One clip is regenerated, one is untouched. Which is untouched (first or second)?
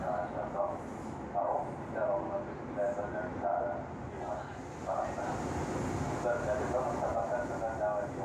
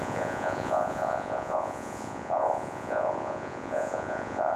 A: first